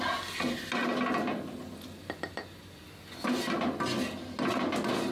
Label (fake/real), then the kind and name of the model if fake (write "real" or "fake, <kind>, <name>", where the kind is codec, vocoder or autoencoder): real